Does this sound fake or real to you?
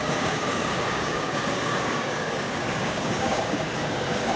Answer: fake